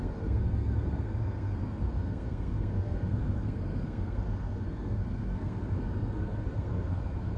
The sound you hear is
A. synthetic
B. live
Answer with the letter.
A